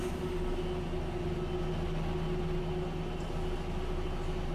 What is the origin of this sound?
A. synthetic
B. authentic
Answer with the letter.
B